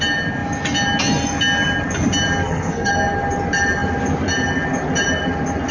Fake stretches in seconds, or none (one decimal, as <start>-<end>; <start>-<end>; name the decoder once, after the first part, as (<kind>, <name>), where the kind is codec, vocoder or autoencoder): 2.4-2.9 (codec, SNAC)